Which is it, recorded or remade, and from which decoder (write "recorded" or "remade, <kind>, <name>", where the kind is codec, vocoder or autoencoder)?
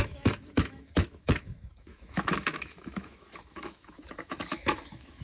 remade, autoencoder, DAC-VAE